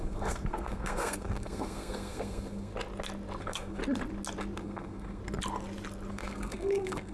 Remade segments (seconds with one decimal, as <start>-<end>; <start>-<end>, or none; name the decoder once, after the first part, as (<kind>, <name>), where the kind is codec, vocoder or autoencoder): 0.0-2.7 (codec, SNAC); 3.4-3.8; 4.6-5.2; 6.1-7.1